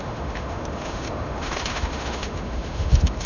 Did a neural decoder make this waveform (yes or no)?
yes